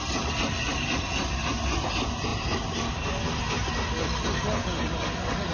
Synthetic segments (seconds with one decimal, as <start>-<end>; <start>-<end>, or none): none